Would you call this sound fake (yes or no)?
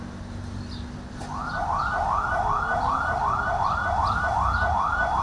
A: no